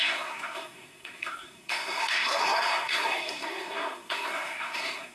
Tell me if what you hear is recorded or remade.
remade